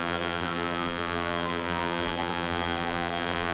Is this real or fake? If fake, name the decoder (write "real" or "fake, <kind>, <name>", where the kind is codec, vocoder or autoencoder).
fake, vocoder, BigVGAN v2